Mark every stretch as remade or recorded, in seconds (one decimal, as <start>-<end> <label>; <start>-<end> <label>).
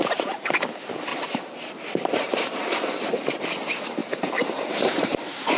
0.0-1.1 recorded; 1.1-3.0 remade; 3.0-4.0 recorded; 4.0-5.6 remade